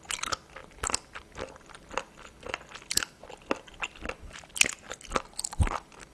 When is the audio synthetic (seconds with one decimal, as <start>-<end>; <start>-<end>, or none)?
none